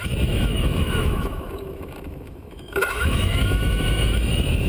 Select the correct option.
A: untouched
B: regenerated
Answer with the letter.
B